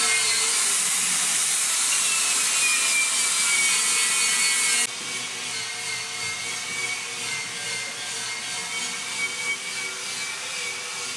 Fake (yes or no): no